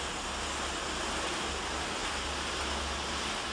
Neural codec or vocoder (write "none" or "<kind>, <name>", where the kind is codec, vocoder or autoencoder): none